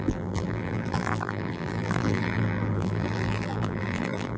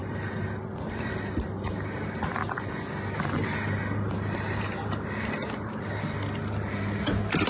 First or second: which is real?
second